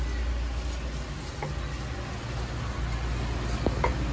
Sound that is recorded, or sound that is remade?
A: recorded